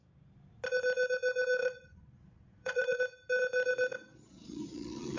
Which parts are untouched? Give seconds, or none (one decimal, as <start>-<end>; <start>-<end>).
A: 0.0-1.6; 3.0-4.1